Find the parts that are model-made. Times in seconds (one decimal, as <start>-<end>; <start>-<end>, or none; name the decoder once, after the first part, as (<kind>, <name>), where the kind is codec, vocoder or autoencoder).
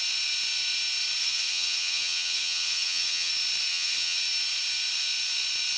1.2-3.3 (vocoder, HiFi-GAN); 3.7-4.2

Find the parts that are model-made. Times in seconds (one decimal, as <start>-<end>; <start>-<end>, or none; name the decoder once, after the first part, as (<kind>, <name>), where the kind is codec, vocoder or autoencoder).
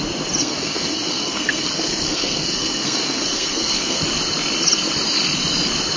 0.4-4.0 (codec, SNAC)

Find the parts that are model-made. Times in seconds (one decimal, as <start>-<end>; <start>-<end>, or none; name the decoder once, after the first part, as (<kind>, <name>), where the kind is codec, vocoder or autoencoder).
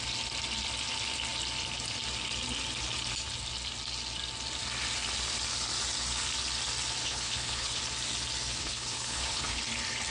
7.0-7.8 (codec, HILCodec); 8.6-9.6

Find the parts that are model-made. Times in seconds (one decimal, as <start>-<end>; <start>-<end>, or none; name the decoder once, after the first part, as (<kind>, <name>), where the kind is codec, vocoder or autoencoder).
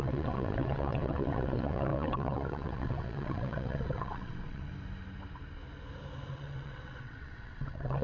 0.0-4.7 (vocoder, WaveNeXt); 6.3-8.0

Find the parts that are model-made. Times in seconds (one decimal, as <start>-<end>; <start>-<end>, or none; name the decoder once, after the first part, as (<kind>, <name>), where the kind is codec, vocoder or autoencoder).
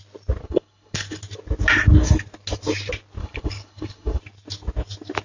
0.4-1.2 (codec, HILCodec); 3.2-4.2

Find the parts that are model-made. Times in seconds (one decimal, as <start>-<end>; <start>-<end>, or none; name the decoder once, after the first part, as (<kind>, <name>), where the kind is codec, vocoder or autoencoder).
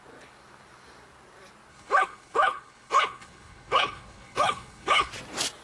1.7-5.1 (codec, HILCodec)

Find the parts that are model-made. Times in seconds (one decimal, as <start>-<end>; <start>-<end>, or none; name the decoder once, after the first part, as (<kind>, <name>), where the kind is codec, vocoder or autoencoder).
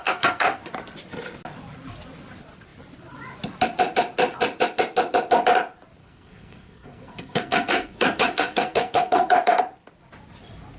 0.0-0.6 (codec, SNAC); 6.0-9.6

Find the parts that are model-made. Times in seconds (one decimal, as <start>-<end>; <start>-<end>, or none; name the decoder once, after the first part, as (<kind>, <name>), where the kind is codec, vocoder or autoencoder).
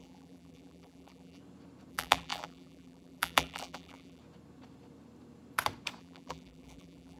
0.0-1.4 (vocoder, BigVGAN v2); 1.9-4.2; 6.0-7.2